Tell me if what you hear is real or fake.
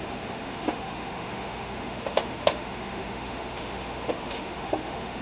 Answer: fake